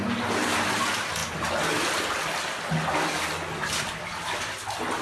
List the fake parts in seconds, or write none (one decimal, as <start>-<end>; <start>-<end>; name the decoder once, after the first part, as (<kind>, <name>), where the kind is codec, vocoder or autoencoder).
none